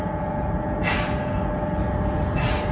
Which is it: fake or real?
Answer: real